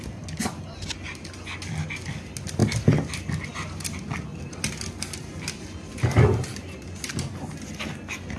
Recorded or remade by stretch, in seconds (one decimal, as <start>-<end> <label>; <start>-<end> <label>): 0.0-8.4 recorded